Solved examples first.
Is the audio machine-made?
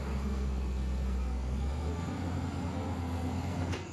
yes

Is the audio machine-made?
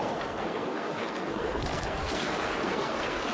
yes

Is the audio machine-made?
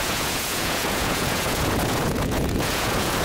yes